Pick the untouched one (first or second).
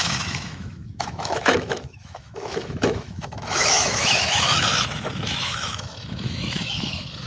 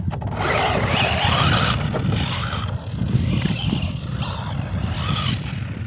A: second